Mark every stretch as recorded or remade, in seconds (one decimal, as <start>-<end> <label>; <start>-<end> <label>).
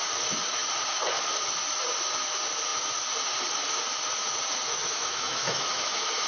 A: 0.0-4.7 recorded; 4.7-6.3 remade